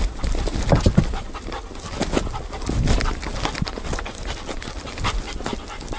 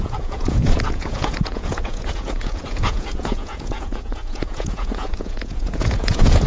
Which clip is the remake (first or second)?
second